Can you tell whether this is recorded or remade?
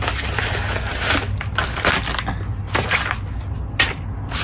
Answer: recorded